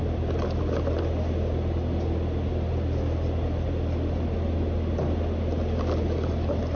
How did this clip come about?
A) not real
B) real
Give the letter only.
B